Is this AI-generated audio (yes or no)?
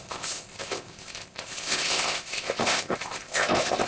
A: yes